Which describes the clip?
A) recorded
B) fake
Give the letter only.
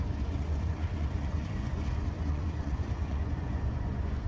B